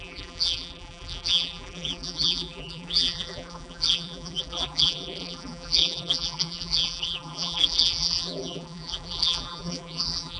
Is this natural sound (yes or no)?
no